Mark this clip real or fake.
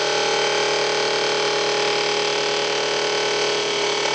real